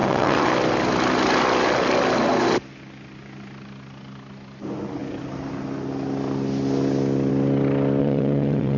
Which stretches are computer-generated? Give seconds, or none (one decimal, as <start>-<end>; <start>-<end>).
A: 0.0-0.5; 8.0-8.8